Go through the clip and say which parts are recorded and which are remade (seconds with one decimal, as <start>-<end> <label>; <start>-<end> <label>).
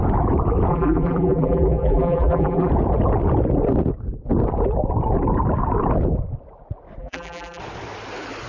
0.0-0.7 recorded; 0.7-2.7 remade; 2.7-7.0 recorded; 7.0-7.6 remade; 7.6-8.5 recorded